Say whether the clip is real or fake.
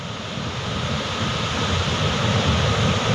real